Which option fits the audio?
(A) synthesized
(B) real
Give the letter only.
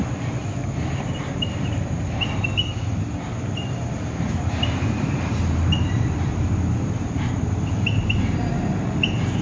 A